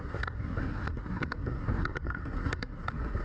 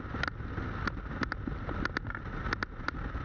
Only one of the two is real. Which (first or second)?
second